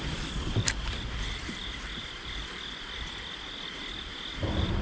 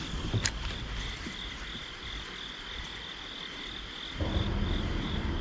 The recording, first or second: second